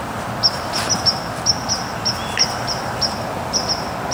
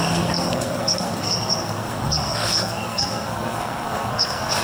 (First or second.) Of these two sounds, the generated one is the second